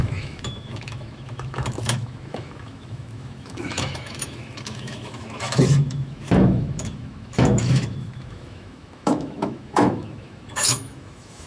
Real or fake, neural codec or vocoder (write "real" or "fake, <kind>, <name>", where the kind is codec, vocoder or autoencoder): fake, autoencoder, DAC-VAE